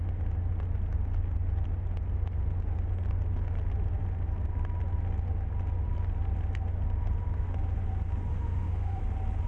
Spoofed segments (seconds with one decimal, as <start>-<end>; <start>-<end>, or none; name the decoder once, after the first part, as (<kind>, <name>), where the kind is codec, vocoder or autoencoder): 8.3-9.0 (autoencoder, DAC-VAE)